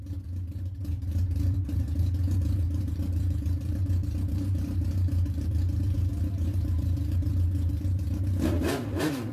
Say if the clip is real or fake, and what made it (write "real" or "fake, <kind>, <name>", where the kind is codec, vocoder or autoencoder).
fake, vocoder, BigVGAN v2